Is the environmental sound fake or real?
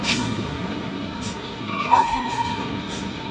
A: fake